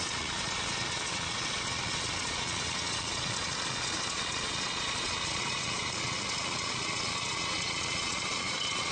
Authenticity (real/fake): fake